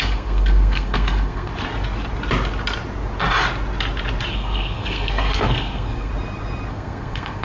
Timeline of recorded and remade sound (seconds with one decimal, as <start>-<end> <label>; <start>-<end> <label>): 0.0-1.5 remade; 1.5-4.3 recorded; 4.3-6.1 remade; 6.1-6.7 recorded; 6.7-7.4 remade